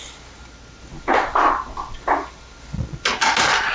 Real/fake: real